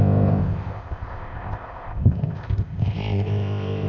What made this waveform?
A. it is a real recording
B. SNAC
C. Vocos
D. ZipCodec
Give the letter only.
D